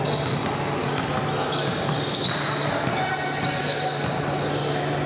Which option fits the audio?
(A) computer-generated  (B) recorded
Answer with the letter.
B